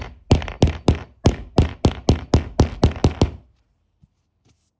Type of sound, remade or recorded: recorded